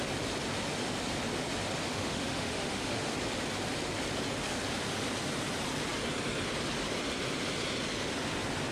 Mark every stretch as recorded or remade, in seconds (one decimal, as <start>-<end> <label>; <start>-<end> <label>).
0.0-1.9 recorded; 1.9-3.1 remade; 3.1-8.7 recorded